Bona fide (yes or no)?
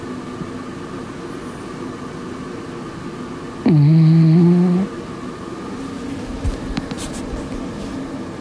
yes